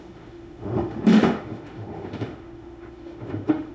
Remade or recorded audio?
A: remade